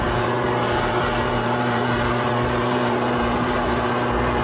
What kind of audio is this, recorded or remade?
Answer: remade